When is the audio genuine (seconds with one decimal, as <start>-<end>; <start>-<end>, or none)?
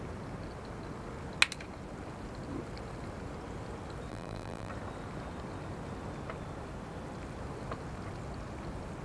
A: 0.0-4.1; 4.7-9.0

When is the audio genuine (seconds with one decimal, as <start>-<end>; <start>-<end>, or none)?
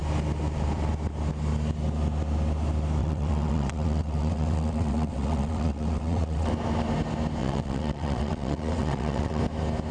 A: 0.0-3.0; 6.5-7.4; 9.4-9.9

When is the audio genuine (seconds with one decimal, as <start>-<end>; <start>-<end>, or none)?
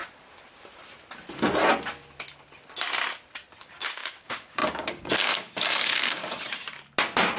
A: 0.0-3.6; 6.2-7.4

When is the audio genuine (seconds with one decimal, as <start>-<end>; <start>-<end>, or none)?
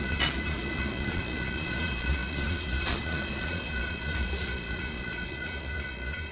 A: none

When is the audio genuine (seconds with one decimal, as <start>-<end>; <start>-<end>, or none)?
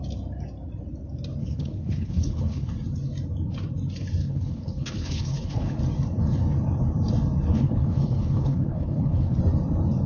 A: 0.0-1.4; 2.7-4.2; 5.8-7.5; 9.4-10.1